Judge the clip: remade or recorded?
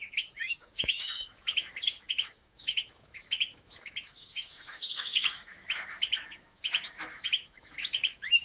remade